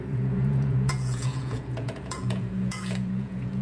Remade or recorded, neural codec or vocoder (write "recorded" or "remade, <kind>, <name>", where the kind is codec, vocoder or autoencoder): remade, vocoder, Vocos